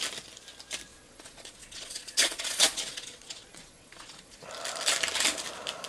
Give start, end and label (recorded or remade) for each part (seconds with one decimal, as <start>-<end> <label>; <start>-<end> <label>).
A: 0.0-0.9 recorded; 0.9-4.4 remade; 4.4-5.9 recorded